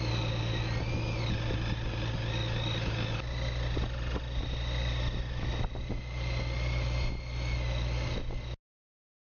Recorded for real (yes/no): yes